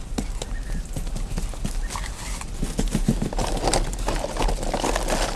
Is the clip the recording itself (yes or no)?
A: yes